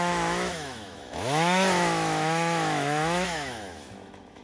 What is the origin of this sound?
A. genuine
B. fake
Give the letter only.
B